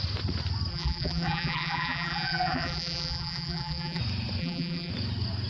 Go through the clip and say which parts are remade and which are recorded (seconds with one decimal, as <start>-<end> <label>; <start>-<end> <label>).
0.0-0.7 recorded; 0.7-4.0 remade; 4.0-4.4 recorded; 4.4-4.9 remade; 4.9-5.5 recorded